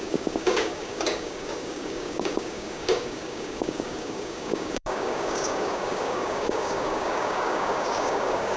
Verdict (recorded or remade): remade